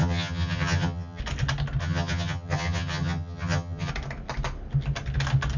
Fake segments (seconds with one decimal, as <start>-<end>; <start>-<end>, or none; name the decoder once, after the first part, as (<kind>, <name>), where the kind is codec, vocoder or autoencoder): 0.0-1.2 (vocoder, HiFi-GAN); 1.8-3.9